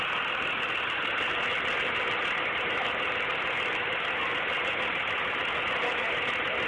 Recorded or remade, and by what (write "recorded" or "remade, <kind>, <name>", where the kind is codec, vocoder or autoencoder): recorded